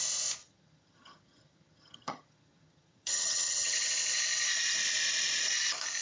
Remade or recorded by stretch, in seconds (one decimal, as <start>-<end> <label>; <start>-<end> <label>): 0.0-0.4 recorded; 0.4-3.9 remade; 3.9-6.0 recorded